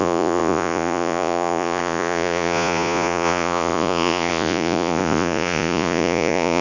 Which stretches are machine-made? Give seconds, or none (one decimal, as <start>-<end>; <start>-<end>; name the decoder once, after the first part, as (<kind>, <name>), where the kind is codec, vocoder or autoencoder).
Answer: 0.0-6.6 (vocoder, Vocos)